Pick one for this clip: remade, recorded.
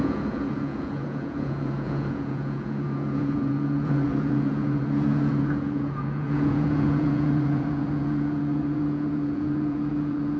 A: remade